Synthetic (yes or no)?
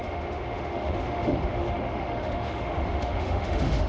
yes